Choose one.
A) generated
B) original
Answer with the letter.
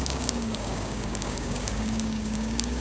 A